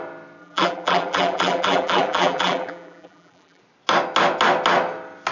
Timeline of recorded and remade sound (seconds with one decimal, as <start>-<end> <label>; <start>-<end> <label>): 0.0-0.4 recorded; 0.4-3.6 remade; 3.6-5.3 recorded